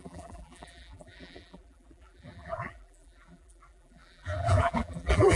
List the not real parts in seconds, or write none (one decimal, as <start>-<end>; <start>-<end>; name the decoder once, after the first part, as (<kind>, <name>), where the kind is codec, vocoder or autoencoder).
0.0-5.4 (vocoder, BigVGAN v2)